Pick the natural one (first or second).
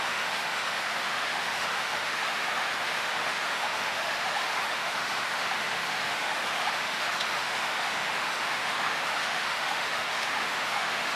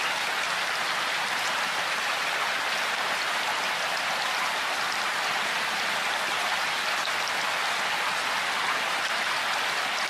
second